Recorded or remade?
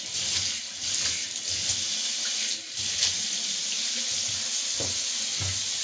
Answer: recorded